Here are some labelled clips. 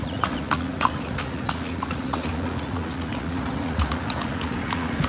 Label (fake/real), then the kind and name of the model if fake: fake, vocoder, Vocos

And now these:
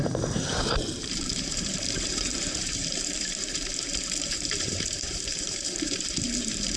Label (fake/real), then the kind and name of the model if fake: fake, vocoder, BigVGAN v2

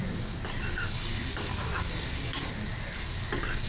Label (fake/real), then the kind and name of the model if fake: real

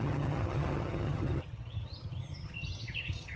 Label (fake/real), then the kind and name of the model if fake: fake, vocoder, HiFi-GAN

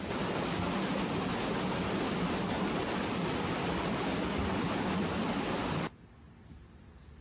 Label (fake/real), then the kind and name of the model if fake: real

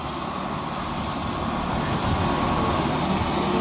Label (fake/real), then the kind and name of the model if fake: real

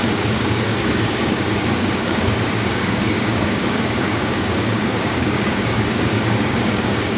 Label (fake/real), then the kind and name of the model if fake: fake, codec, DAC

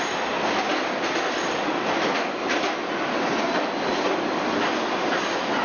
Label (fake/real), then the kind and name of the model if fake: real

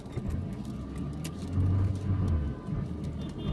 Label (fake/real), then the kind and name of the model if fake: real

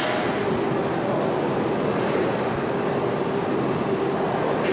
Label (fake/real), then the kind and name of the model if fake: real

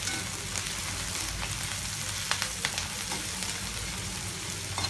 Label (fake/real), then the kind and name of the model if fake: real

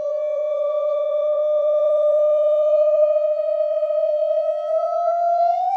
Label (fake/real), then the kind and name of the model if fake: fake, vocoder, Vocos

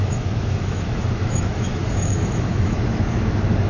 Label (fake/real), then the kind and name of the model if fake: fake, autoencoder, DAC-VAE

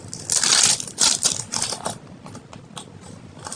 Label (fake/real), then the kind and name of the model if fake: real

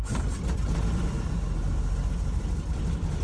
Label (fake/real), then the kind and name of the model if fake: real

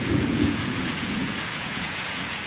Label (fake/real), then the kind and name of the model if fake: fake, vocoder, Vocos